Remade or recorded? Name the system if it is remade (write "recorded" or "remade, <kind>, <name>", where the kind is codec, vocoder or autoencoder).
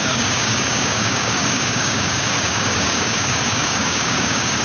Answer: remade, codec, DAC